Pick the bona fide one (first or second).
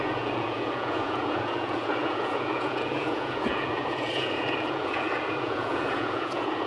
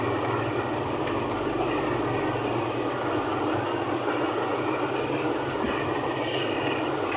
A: second